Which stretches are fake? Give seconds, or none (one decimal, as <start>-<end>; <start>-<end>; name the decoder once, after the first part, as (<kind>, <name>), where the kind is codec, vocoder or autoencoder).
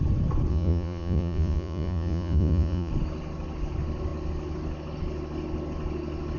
0.5-2.9 (vocoder, Vocos)